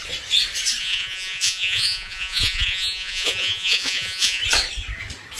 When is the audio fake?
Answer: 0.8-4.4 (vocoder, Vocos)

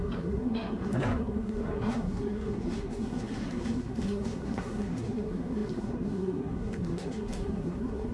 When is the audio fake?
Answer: 0.0-8.1 (codec, SNAC)

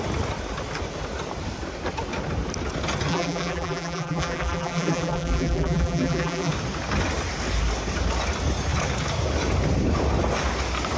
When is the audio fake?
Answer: 3.1-6.5 (vocoder, BigVGAN v2)

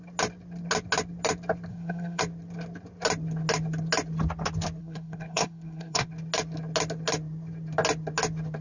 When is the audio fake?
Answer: 1.7-2.2 (codec, SNAC); 4.8-6.1